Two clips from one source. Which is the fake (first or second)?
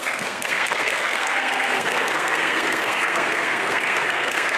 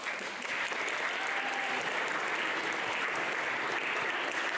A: first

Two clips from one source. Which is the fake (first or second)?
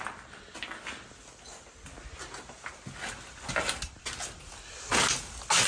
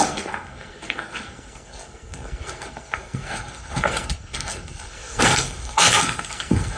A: second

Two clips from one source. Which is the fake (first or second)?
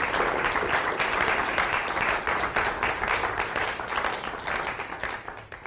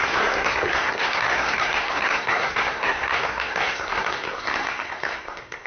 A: second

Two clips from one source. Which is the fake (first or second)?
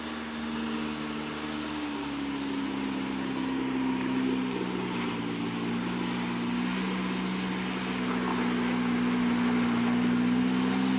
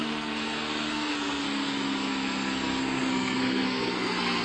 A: second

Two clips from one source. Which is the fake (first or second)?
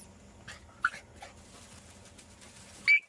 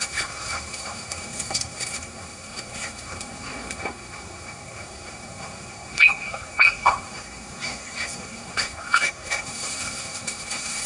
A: second